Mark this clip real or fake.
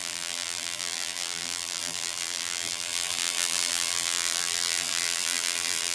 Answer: fake